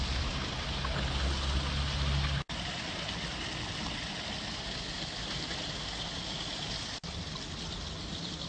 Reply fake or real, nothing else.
real